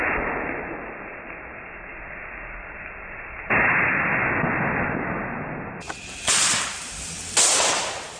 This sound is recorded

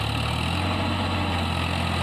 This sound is recorded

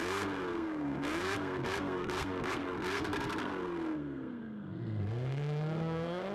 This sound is remade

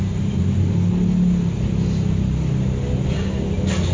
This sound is recorded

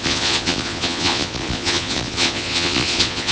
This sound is remade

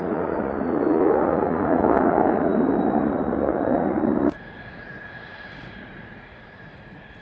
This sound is remade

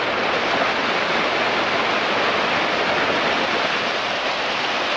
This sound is recorded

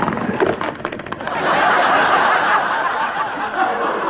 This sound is recorded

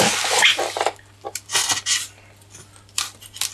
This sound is recorded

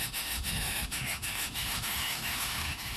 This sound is remade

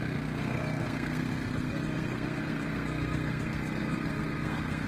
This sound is remade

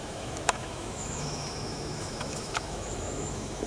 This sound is remade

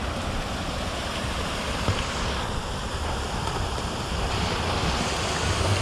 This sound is recorded